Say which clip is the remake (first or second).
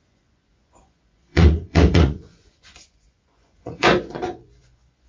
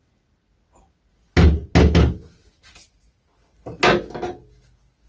first